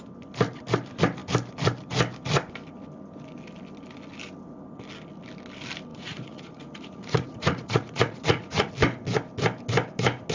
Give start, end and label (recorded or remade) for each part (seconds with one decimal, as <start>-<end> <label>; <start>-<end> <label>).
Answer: 0.0-5.9 recorded; 5.9-8.7 remade; 8.7-10.3 recorded